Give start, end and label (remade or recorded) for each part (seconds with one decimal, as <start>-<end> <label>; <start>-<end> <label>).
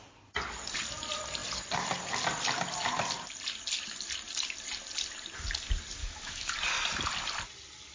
0.0-6.0 recorded; 6.0-6.5 remade; 6.5-7.9 recorded